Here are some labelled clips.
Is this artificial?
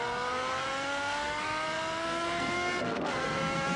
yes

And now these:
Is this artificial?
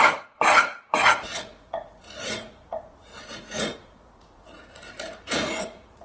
yes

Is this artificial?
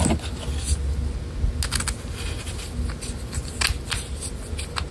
no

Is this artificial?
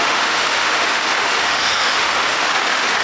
yes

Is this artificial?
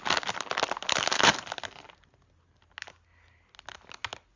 no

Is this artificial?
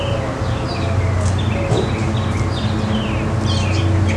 no